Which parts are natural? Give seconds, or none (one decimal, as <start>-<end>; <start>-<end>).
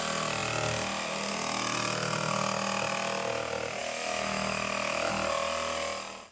0.0-3.8; 5.1-6.3